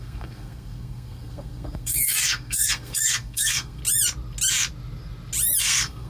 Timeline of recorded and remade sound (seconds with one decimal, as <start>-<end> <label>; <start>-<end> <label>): 0.0-3.8 remade; 3.8-5.6 recorded; 5.6-6.1 remade